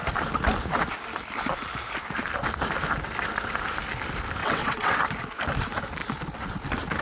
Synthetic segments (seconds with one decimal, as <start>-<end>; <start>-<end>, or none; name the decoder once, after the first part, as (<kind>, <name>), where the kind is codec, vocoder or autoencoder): 4.4-5.0 (vocoder, WaveNeXt)

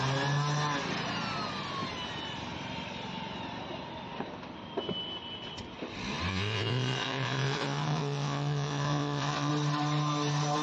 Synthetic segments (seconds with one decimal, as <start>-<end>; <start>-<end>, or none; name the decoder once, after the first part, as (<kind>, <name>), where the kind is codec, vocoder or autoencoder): 6.3-9.5 (vocoder, Vocos)

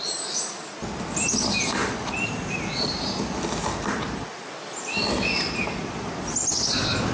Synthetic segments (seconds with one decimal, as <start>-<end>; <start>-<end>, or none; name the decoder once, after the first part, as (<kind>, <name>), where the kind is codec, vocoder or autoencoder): none